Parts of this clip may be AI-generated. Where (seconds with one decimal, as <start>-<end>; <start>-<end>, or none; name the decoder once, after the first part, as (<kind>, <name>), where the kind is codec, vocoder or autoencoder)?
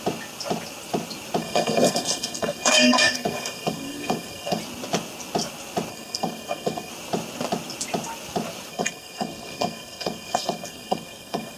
1.4-4.6 (codec, SNAC); 5.9-6.9; 8.7-11.6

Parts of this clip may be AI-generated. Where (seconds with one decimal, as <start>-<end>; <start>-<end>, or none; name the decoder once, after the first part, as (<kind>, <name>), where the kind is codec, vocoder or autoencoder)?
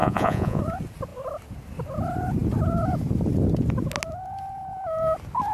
0.0-0.6 (vocoder, Vocos)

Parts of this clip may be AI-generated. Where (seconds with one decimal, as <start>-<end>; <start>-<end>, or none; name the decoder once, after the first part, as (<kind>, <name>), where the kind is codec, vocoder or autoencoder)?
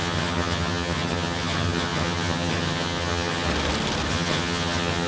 0.0-3.5 (vocoder, HiFi-GAN); 4.1-5.1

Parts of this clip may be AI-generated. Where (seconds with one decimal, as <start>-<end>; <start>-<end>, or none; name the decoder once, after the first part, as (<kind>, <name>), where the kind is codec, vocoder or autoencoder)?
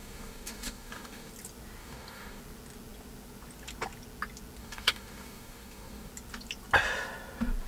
0.0-1.3 (codec, DAC); 1.8-2.4; 4.6-6.1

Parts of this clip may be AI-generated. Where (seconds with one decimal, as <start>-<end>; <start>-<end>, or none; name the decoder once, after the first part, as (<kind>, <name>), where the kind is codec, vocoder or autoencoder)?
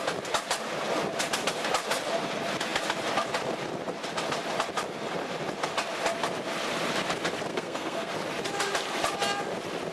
7.5-8.1 (codec, SNAC)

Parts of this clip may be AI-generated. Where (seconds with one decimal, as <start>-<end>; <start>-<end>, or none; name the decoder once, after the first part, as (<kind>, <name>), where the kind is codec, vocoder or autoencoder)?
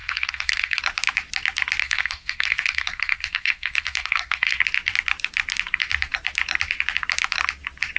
0.0-0.8 (codec, SNAC); 1.8-4.6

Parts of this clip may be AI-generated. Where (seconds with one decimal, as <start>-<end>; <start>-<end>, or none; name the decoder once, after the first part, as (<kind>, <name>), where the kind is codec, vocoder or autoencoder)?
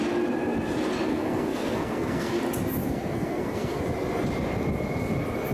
1.1-2.4 (codec, SNAC); 2.8-3.8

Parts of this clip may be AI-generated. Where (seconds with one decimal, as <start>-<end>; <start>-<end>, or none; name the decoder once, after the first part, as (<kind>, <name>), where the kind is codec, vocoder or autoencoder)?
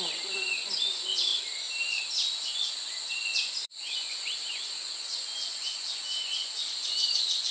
0.0-1.3 (vocoder, Vocos); 2.5-7.5